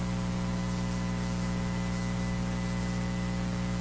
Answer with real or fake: real